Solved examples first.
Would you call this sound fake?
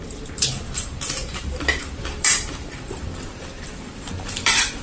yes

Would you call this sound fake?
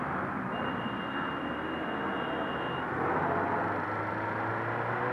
no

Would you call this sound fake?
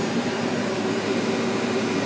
yes